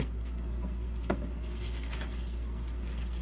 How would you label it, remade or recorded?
remade